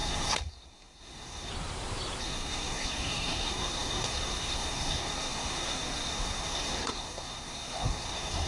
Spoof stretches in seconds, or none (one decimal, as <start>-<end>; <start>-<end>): 0.0-1.5; 2.2-8.5

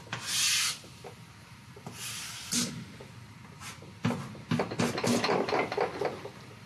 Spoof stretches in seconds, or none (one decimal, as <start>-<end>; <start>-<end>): none

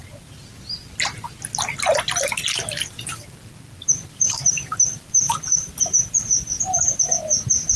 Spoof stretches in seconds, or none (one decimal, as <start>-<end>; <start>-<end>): 0.0-0.5; 4.1-7.8

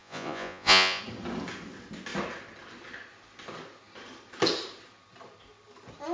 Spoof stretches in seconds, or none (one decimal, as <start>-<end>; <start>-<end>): 0.0-1.0

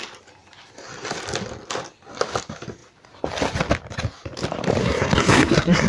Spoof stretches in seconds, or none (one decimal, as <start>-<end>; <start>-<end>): 4.8-5.9

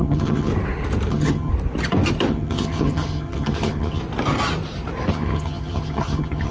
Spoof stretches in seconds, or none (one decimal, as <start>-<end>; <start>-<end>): 0.0-0.5; 1.1-1.5; 2.3-4.0; 5.1-6.5